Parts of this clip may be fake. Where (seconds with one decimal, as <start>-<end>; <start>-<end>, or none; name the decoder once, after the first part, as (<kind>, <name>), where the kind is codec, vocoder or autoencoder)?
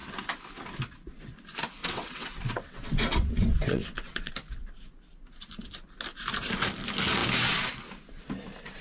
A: 1.8-4.3 (vocoder, WaveNeXt)